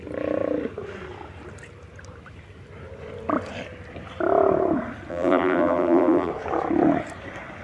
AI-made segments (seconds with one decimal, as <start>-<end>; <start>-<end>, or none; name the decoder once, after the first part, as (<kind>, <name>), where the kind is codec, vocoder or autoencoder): 5.1-6.3 (vocoder, BigVGAN v2)